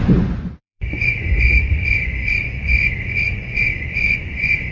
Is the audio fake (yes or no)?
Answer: yes